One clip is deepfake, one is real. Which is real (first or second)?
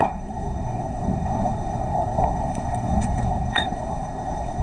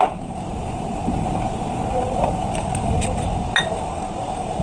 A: second